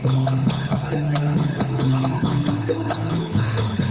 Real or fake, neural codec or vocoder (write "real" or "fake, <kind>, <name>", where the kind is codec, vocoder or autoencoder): fake, codec, HILCodec